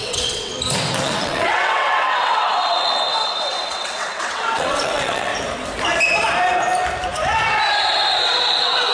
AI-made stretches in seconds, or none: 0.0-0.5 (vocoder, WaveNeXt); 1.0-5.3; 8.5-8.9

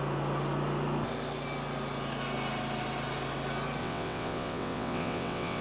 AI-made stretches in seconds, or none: 3.8-5.6 (vocoder, WaveNeXt)

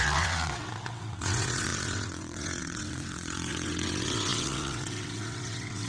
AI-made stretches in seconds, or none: 0.0-5.9 (vocoder, WaveNeXt)

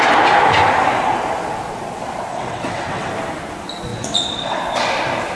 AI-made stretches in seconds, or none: 2.3-3.1 (vocoder, WaveNeXt); 3.9-4.6

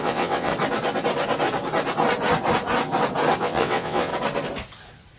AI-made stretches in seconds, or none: 0.0-0.5 (vocoder, WaveNeXt); 3.4-4.1

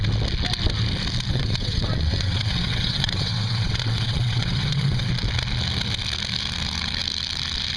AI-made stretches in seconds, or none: 1.3-5.1 (vocoder, WaveNeXt)

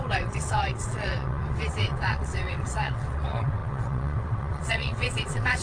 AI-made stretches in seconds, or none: 0.0-5.6 (vocoder, WaveNeXt)

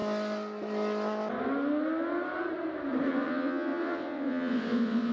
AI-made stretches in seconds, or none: 3.1-5.1 (vocoder, WaveNeXt)